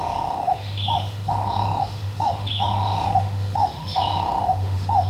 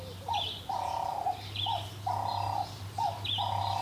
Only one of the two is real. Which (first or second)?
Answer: second